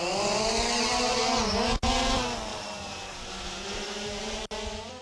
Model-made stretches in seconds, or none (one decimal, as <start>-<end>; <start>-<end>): 2.5-4.4